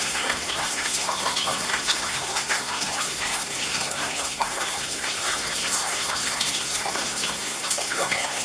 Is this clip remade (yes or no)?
yes